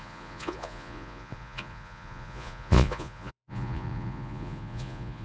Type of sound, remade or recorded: remade